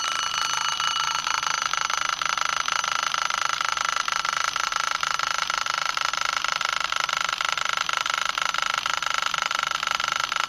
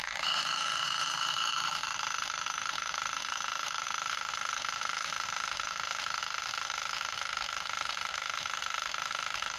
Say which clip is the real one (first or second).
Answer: first